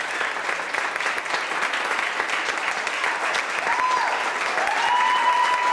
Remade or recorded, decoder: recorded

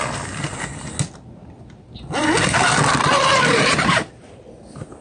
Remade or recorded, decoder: recorded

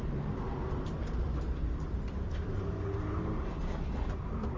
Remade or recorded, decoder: remade, vocoder, BigVGAN v2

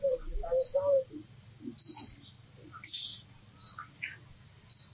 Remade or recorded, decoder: recorded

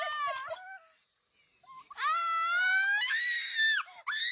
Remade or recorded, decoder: recorded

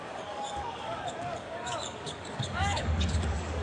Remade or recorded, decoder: remade, codec, DAC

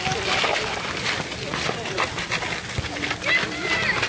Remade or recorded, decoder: recorded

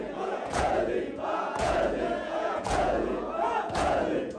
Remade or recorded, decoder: remade, vocoder, Vocos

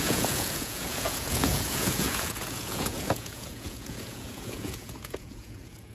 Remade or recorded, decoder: remade, vocoder, Vocos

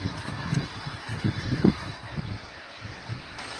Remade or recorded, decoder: remade, codec, SNAC